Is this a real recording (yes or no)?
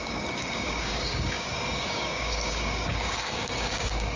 no